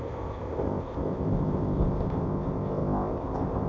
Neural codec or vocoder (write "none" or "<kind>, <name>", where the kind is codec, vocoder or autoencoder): codec, ZipCodec